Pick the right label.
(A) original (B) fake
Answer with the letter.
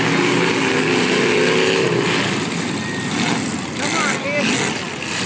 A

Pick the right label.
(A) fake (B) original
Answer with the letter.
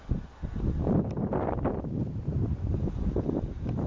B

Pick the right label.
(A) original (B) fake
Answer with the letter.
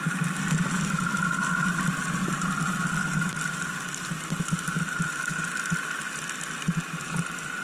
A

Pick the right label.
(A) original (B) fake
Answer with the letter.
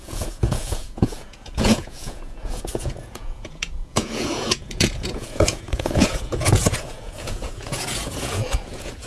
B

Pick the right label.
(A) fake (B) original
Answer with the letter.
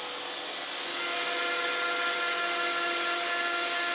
B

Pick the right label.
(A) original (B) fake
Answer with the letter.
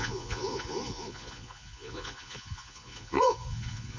B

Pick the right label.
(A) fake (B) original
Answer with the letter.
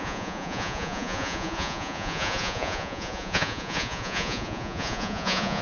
A